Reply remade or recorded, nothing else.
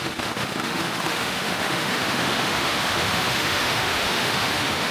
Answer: remade